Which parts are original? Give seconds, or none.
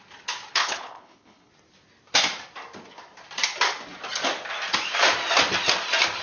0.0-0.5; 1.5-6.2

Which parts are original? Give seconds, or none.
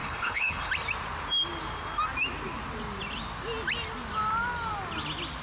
0.7-5.4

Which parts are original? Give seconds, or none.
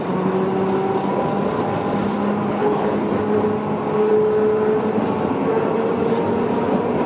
0.0-2.5; 3.1-7.1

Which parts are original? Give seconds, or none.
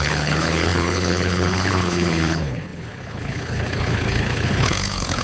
none